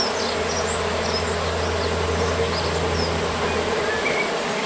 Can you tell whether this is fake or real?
real